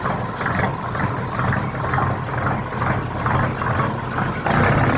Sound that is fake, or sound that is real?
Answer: real